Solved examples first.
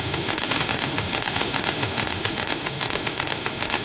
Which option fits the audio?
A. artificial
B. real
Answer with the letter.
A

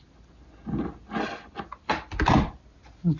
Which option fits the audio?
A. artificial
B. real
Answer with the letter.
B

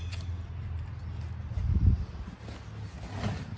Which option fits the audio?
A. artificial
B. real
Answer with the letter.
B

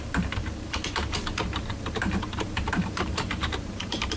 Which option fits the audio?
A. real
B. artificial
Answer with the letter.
B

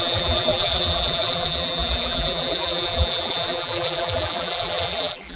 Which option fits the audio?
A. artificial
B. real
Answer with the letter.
A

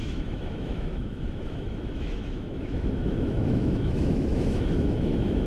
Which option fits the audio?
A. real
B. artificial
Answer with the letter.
B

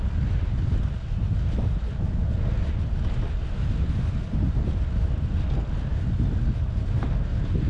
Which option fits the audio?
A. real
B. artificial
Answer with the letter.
A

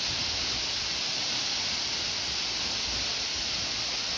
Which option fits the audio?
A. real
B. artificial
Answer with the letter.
A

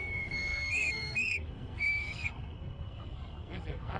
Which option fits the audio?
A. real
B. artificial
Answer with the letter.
B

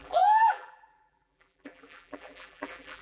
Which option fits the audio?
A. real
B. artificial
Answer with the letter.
B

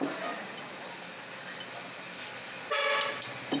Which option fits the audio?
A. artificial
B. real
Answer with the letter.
B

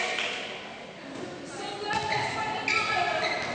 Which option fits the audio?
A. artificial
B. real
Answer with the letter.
B